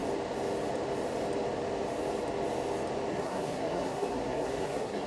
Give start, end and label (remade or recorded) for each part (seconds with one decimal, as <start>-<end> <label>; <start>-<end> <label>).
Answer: 0.0-3.1 recorded; 3.1-5.1 remade

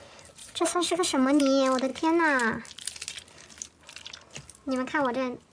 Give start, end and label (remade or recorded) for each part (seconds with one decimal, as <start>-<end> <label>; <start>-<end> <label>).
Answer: 0.0-0.4 recorded; 0.4-1.4 remade; 1.4-5.5 recorded

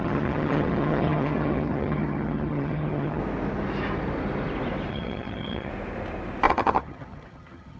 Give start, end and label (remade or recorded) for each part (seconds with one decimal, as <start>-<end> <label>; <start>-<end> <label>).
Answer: 0.0-3.2 remade; 3.2-4.9 recorded; 4.9-5.7 remade; 5.7-6.5 recorded; 6.5-7.8 remade

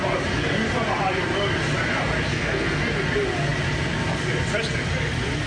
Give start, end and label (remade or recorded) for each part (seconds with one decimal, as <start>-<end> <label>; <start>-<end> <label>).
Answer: 0.0-2.3 recorded; 2.3-2.8 remade; 2.8-5.5 recorded

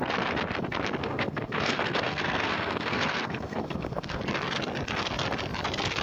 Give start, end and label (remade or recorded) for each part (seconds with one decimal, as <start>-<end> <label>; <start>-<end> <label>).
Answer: 0.0-1.0 recorded; 1.0-4.2 remade; 4.2-6.0 recorded

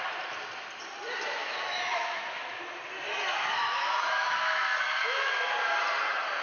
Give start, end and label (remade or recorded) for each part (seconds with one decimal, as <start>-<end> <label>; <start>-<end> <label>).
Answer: 0.0-1.4 recorded; 1.4-2.6 remade; 2.6-3.3 recorded; 3.3-5.5 remade; 5.5-6.4 recorded